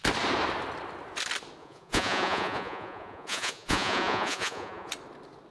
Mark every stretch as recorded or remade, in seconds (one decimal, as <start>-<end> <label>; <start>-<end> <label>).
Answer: 0.0-1.6 recorded; 1.6-4.9 remade; 4.9-5.5 recorded